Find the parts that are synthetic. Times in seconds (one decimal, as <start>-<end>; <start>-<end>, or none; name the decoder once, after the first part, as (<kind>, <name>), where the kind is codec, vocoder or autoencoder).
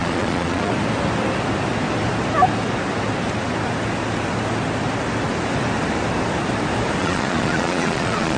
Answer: 0.0-0.7 (vocoder, Vocos); 7.0-8.4